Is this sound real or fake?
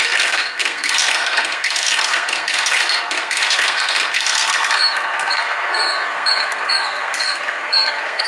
fake